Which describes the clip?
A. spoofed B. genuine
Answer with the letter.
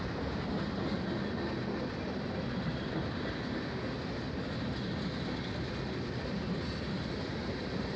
B